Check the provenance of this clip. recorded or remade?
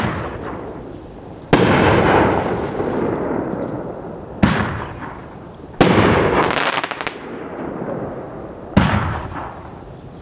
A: recorded